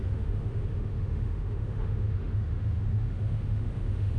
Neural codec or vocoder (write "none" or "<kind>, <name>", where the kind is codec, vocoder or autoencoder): autoencoder, DAC-VAE